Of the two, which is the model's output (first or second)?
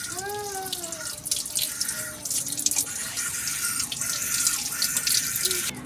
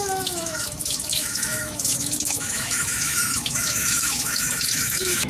second